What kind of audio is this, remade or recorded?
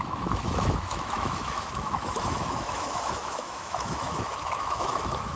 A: remade